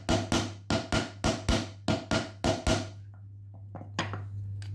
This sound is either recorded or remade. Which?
recorded